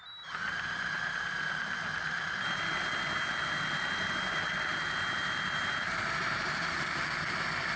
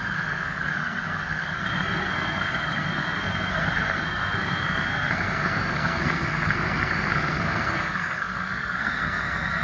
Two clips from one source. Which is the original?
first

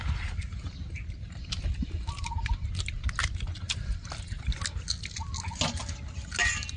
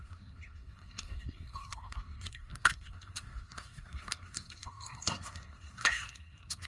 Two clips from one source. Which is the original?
first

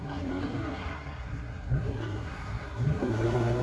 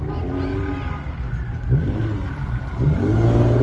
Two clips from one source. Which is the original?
second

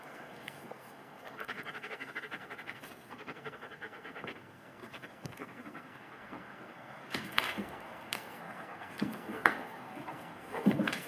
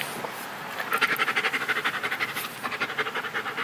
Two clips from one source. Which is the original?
second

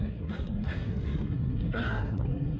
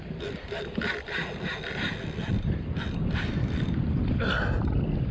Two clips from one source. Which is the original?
second